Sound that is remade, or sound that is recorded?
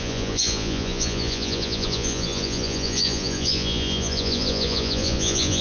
remade